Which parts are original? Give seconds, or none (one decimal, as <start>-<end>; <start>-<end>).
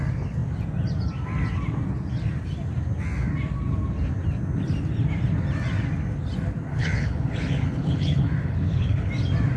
0.0-6.7; 9.1-9.6